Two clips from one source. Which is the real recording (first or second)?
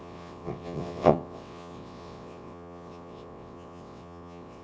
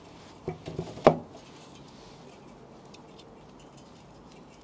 second